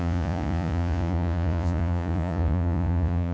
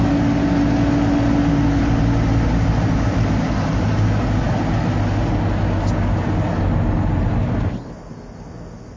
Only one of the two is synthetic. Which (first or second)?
first